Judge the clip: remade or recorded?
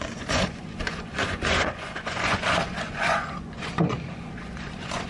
remade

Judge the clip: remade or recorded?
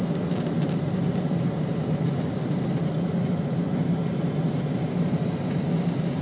recorded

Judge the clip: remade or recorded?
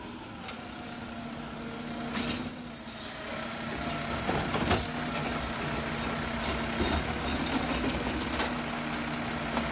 recorded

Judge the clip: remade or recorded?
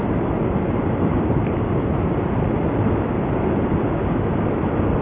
recorded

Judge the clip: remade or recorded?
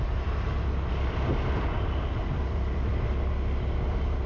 recorded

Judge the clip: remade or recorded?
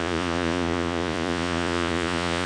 remade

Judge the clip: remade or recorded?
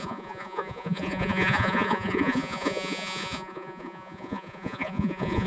remade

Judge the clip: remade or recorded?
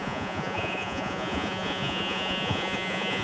remade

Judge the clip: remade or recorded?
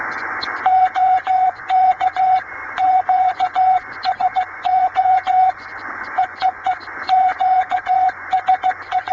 remade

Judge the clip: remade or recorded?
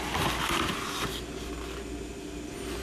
recorded